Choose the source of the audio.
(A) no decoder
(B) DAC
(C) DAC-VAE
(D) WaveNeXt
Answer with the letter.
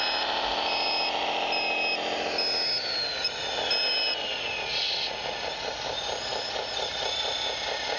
A